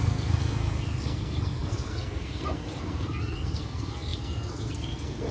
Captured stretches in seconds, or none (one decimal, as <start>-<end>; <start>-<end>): none